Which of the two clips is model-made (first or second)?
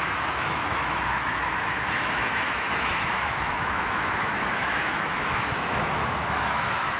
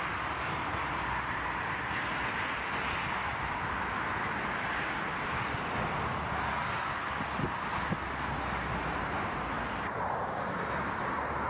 first